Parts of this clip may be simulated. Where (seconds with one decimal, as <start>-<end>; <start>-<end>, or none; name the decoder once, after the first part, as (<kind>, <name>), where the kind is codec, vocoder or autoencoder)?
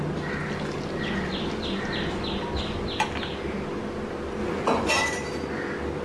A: 4.4-4.9 (vocoder, Vocos)